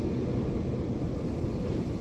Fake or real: real